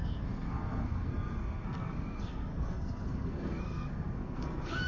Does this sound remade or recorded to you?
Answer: remade